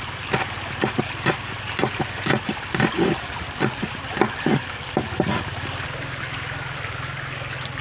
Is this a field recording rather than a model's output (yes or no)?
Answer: yes